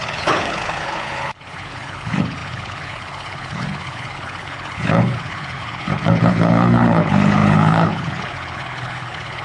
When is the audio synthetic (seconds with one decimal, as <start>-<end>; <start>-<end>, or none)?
0.0-9.4